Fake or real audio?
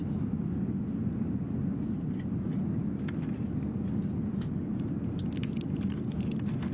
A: real